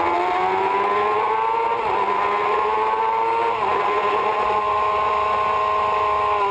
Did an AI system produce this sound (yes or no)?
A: no